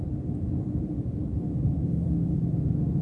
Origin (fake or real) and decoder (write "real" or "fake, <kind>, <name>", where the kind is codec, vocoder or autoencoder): fake, vocoder, BigVGAN v2